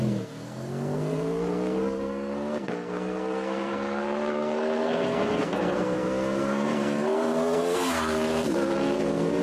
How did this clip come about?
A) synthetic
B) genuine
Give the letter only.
A